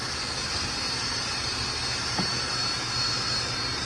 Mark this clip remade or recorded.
recorded